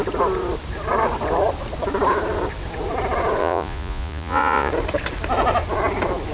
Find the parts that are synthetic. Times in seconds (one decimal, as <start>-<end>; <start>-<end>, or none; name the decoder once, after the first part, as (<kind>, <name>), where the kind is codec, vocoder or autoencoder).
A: 3.4-4.7 (vocoder, Vocos)